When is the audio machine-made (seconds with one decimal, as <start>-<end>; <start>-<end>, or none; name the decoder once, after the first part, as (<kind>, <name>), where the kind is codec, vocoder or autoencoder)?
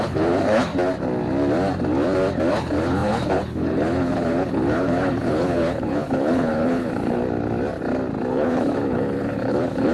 0.0-0.7 (codec, HILCodec); 2.5-7.2; 8.3-9.9